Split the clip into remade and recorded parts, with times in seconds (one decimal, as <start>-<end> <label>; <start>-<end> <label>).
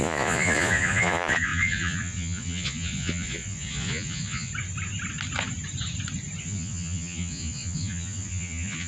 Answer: 0.0-4.5 remade; 4.5-6.4 recorded; 6.4-8.9 remade